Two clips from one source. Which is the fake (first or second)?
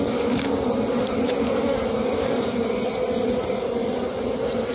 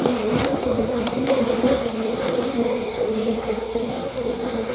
second